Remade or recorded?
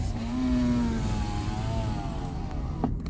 recorded